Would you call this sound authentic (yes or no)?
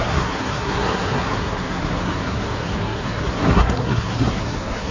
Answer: no